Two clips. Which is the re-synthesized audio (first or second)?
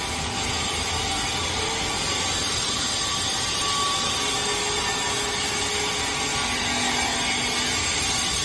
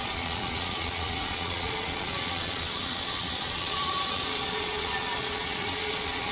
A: second